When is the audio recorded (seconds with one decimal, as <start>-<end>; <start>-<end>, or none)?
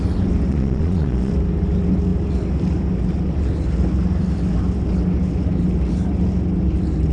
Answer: 0.0-0.5; 1.3-7.1